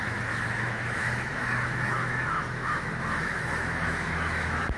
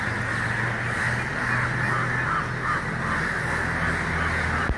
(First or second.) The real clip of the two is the second